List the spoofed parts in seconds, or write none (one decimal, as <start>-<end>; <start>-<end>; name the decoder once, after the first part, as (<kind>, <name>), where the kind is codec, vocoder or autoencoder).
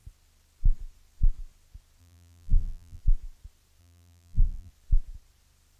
2.0-3.0 (vocoder, BigVGAN v2); 3.8-4.7